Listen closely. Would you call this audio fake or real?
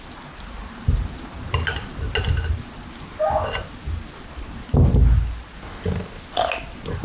real